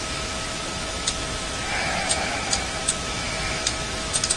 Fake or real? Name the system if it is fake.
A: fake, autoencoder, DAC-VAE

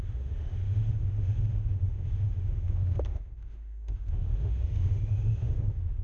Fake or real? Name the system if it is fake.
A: fake, autoencoder, DAC-VAE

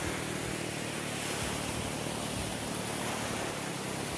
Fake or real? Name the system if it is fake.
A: real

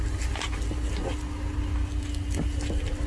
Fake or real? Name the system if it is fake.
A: real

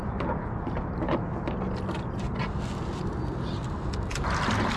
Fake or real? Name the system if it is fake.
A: real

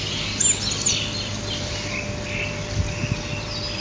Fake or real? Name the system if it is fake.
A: real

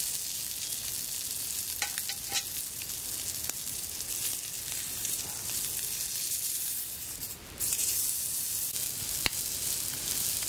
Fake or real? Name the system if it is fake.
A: real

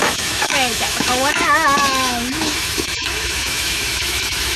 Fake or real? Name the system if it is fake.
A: fake, autoencoder, DAC-VAE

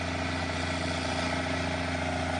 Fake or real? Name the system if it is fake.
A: real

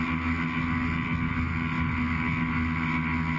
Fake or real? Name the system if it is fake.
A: real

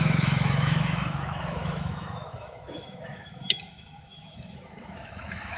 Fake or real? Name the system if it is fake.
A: fake, autoencoder, DAC-VAE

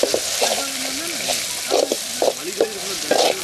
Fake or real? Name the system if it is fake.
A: real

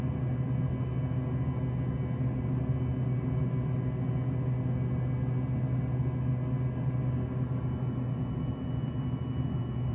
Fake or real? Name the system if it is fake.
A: real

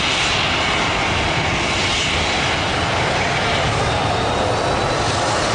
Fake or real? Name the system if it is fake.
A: real